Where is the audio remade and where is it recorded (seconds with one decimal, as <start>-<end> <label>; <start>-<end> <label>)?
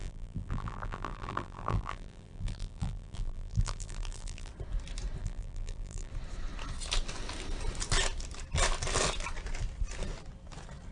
0.0-4.5 remade; 4.5-5.2 recorded; 5.2-6.1 remade; 6.1-10.9 recorded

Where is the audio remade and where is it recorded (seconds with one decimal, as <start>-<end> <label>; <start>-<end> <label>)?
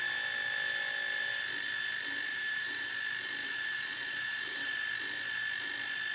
0.0-2.3 recorded; 2.3-2.9 remade; 2.9-3.4 recorded; 3.4-4.7 remade; 4.7-6.1 recorded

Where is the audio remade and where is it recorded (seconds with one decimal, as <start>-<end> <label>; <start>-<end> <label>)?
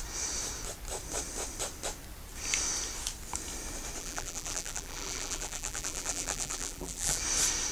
0.0-4.0 recorded; 4.0-7.2 remade; 7.2-7.7 recorded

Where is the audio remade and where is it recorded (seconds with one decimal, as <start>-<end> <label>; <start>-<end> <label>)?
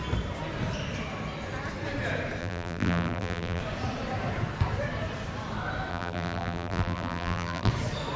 0.0-2.4 recorded; 2.4-3.6 remade; 3.6-5.9 recorded; 5.9-7.7 remade; 7.7-8.2 recorded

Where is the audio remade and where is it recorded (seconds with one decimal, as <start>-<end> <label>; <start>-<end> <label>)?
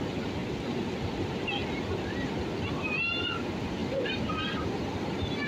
0.0-5.5 recorded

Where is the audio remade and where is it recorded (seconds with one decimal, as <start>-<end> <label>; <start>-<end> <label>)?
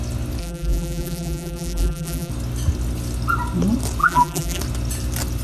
0.0-0.4 recorded; 0.4-2.3 remade; 2.3-4.0 recorded; 4.0-4.6 remade; 4.6-5.4 recorded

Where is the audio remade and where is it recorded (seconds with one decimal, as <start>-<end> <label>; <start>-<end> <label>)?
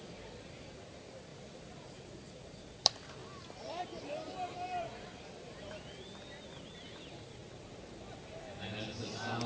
0.0-7.4 remade; 7.4-9.1 recorded; 9.1-9.5 remade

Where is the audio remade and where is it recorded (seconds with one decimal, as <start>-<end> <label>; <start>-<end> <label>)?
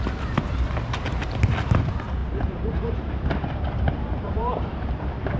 0.0-2.2 recorded; 2.2-5.4 remade